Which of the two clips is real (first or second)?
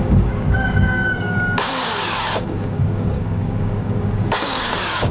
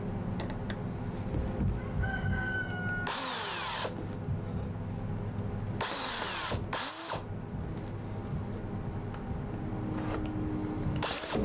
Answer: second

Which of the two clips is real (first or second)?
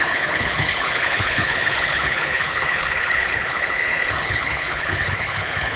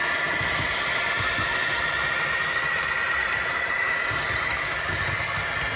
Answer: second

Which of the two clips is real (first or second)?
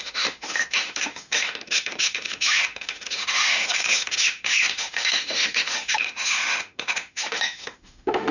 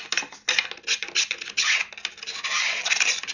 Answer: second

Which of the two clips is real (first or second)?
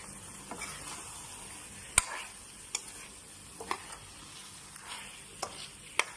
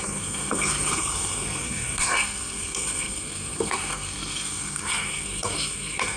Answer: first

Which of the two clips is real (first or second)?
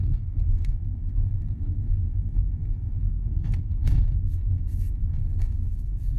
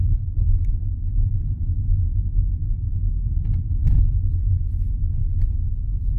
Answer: second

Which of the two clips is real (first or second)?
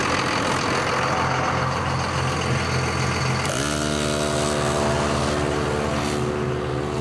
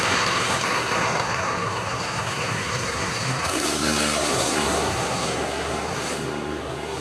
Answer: first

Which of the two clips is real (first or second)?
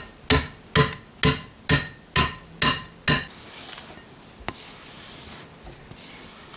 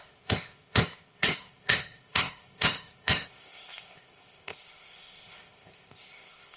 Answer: first